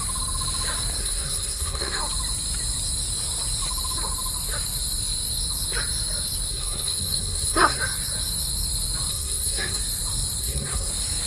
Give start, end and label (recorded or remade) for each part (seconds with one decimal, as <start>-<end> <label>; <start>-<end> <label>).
0.0-1.0 recorded; 1.0-2.0 remade; 2.0-6.5 recorded; 6.5-7.8 remade; 7.8-9.1 recorded; 9.1-9.8 remade; 9.8-10.4 recorded; 10.4-10.9 remade; 10.9-11.3 recorded